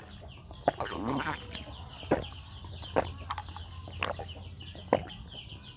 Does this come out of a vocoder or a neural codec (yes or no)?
no